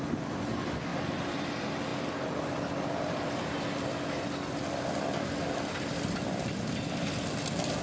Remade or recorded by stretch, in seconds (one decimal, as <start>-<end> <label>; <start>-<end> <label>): 0.0-7.8 recorded